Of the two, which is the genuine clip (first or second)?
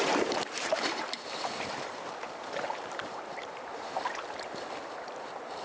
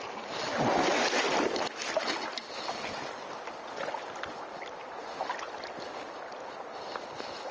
second